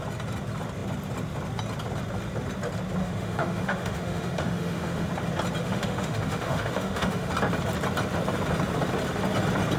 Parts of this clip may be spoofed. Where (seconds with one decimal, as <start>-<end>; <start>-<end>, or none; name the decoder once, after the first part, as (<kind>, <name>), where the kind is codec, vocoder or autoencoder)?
3.0-5.1 (autoencoder, DAC-VAE); 5.6-7.3